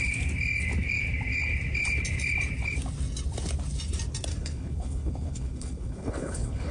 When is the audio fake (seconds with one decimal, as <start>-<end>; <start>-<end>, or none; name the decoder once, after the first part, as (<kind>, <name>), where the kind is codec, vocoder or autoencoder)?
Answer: 4.3-6.7 (codec, HILCodec)